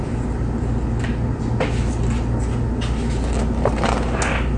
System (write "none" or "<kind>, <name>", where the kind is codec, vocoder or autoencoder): none